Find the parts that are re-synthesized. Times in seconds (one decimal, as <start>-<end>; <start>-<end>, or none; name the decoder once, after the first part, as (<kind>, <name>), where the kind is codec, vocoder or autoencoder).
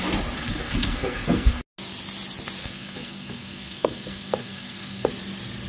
0.4-1.6 (codec, SNAC); 2.6-5.1